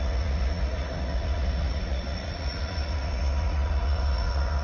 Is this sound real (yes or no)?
no